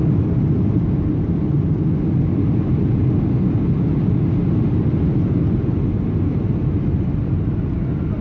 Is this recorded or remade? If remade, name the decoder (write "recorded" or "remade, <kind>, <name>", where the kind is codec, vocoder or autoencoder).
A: recorded